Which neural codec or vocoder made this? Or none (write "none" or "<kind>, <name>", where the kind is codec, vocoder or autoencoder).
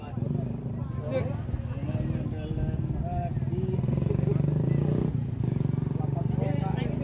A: none